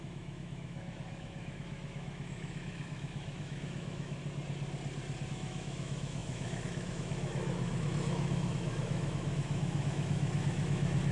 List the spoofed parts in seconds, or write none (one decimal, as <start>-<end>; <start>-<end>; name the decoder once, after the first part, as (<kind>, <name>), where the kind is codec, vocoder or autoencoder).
0.0-4.2 (autoencoder, DAC-VAE); 5.3-11.1